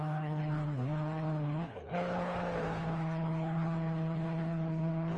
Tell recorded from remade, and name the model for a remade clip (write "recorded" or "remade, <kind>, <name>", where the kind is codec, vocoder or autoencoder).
remade, codec, HILCodec